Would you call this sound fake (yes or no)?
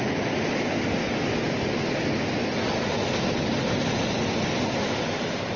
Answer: no